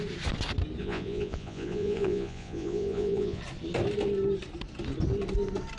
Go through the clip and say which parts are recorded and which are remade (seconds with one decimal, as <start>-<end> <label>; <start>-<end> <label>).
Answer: 0.0-0.8 recorded; 0.8-3.4 remade; 3.4-5.8 recorded